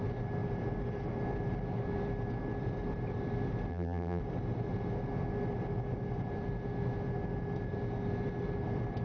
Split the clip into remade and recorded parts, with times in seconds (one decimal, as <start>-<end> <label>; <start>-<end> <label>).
0.0-3.7 recorded; 3.7-4.2 remade; 4.2-9.0 recorded